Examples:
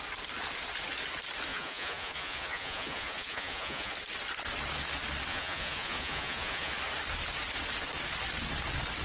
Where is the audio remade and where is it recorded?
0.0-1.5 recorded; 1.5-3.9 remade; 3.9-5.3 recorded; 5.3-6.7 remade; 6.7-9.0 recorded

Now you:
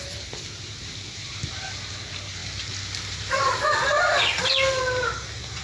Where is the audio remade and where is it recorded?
0.0-5.6 recorded

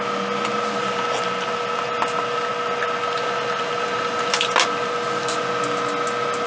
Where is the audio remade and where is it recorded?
0.0-6.5 recorded

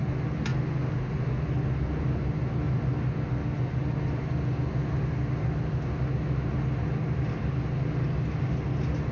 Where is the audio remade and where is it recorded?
0.0-9.1 recorded

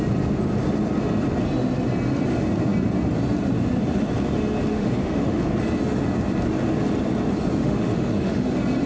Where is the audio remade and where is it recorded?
0.0-4.7 recorded; 4.7-5.4 remade; 5.4-7.6 recorded; 7.6-8.5 remade; 8.5-8.9 recorded

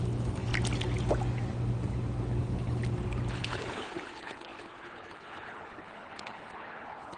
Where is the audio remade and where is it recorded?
0.0-0.5 remade; 0.5-2.4 recorded; 2.4-2.8 remade; 2.8-3.4 recorded; 3.4-7.2 remade